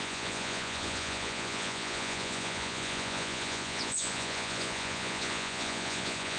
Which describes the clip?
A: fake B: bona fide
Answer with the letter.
A